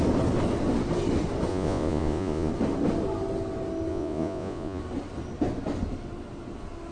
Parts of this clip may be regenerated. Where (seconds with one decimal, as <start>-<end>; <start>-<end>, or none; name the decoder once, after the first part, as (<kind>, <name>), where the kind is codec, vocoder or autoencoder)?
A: 1.5-2.5 (vocoder, Vocos); 3.9-4.8